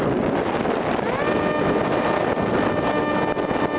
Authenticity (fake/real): real